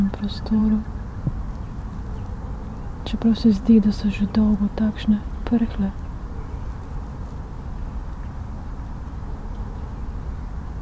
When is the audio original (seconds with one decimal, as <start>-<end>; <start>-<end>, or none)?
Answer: 0.0-10.8